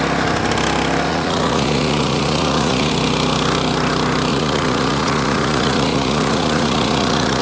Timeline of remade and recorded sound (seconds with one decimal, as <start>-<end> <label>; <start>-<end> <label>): 0.0-1.1 recorded; 1.1-2.9 remade; 2.9-4.3 recorded; 4.3-7.4 remade